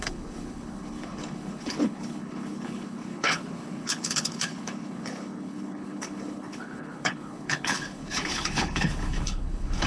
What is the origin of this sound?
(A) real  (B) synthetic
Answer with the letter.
B